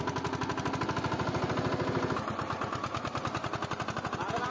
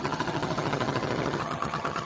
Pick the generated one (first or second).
second